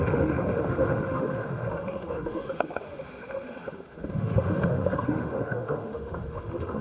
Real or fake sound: fake